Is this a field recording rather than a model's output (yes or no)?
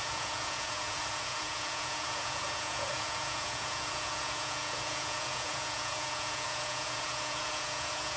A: no